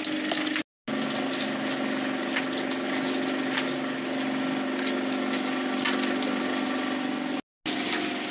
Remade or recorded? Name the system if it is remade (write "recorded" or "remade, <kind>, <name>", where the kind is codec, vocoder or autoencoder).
recorded